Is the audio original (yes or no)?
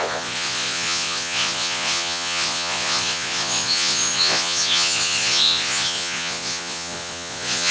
no